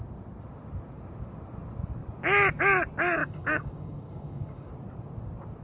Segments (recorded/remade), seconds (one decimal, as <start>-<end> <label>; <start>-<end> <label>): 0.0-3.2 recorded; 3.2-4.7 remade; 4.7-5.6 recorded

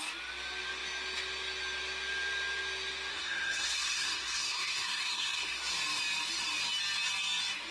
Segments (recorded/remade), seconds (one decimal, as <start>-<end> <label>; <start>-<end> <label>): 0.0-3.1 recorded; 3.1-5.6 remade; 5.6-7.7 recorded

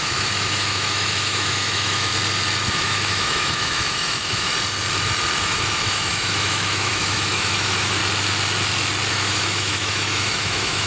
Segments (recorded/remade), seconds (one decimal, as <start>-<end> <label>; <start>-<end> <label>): 0.0-2.1 remade; 2.1-2.7 recorded; 2.7-4.5 remade; 4.5-5.4 recorded; 5.4-8.0 remade; 8.0-9.1 recorded; 9.1-10.9 remade